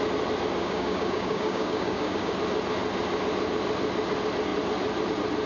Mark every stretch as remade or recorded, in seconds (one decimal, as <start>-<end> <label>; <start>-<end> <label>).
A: 0.0-0.6 recorded; 0.6-2.3 remade; 2.3-5.5 recorded